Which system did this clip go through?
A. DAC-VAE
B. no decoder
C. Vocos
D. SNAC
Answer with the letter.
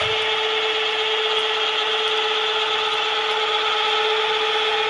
B